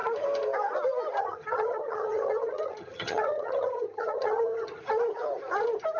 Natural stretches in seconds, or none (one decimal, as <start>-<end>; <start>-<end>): 0.0-1.2; 4.8-6.0